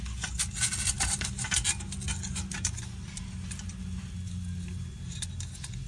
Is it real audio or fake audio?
real